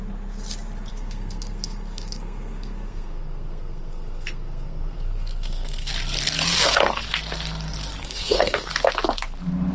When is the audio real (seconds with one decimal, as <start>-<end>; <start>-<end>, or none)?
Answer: 0.0-0.9; 5.9-8.0; 8.7-9.7